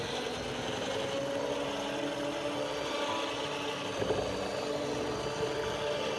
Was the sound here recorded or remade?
recorded